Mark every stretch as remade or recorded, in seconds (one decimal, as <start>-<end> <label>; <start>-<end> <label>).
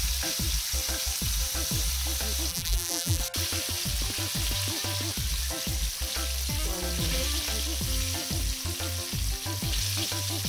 0.0-2.5 recorded; 2.5-3.2 remade; 3.2-10.5 recorded